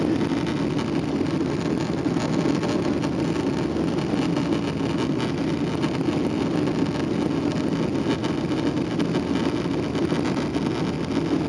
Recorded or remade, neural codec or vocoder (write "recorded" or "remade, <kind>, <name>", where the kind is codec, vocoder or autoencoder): recorded